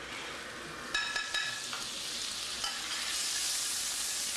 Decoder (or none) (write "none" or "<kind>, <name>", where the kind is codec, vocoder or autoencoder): none